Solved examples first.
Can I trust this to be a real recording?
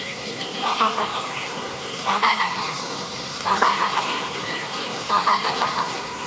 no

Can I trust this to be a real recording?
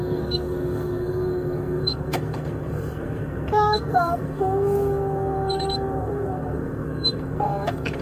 no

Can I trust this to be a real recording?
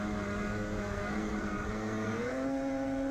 no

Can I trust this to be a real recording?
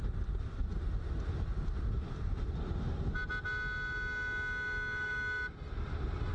yes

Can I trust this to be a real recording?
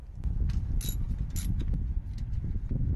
yes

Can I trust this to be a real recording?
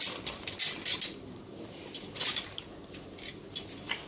yes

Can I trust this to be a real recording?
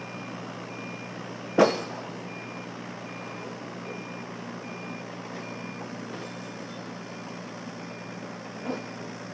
yes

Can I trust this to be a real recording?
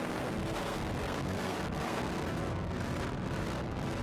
no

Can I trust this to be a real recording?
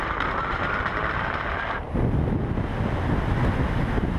yes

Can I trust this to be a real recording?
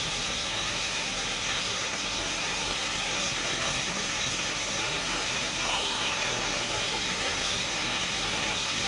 no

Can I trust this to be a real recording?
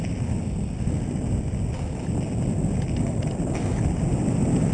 yes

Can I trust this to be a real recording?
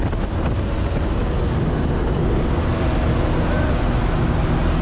yes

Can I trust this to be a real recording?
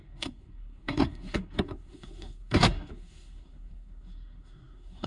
no